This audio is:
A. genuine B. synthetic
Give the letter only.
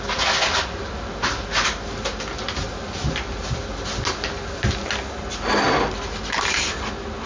A